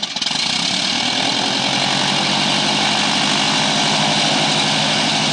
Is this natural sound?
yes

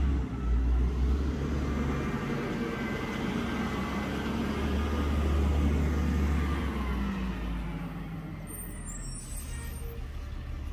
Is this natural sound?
yes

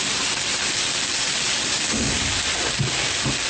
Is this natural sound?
yes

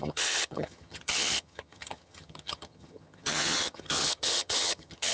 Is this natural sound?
no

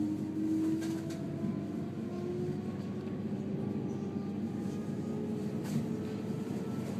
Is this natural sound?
yes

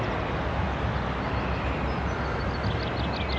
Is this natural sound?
yes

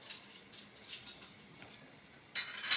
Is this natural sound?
yes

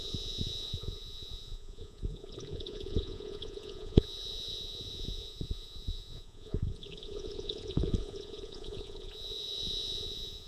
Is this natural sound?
no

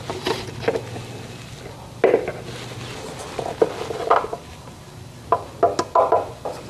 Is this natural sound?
yes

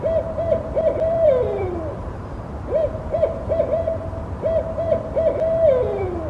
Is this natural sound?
no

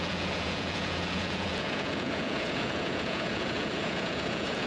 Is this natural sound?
no